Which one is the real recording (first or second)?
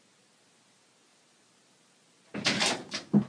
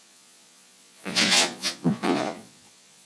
first